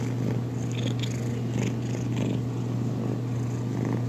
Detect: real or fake real